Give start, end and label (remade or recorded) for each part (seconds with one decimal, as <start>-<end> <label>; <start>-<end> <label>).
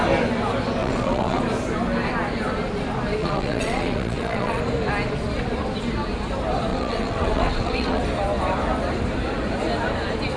0.0-0.8 recorded; 0.8-1.4 remade; 1.4-3.2 recorded; 3.2-4.6 remade; 4.6-6.7 recorded; 6.7-8.0 remade; 8.0-10.4 recorded